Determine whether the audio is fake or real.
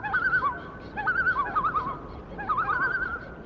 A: real